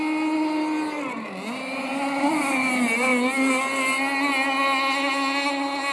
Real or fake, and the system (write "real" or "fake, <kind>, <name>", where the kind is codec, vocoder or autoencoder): real